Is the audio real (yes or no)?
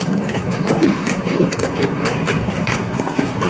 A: no